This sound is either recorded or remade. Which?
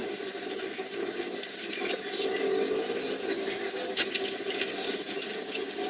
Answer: recorded